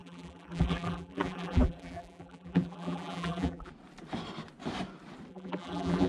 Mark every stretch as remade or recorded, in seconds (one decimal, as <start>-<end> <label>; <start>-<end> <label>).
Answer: 0.0-3.7 remade; 3.7-5.3 recorded; 5.3-6.1 remade